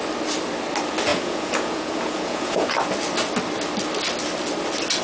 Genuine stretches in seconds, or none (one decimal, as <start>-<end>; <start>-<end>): 0.0-1.1; 2.7-5.0

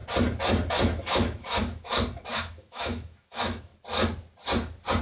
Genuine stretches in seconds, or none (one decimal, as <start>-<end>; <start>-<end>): 0.0-0.7; 1.6-2.3; 3.7-5.0